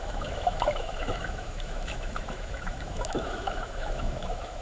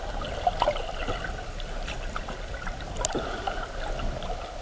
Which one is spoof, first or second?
first